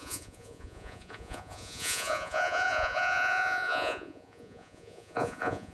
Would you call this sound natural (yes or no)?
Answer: no